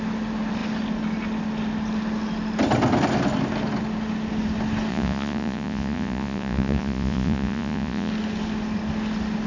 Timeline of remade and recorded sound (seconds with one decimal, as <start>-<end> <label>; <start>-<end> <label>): 0.0-4.9 recorded; 4.9-8.1 remade; 8.1-9.5 recorded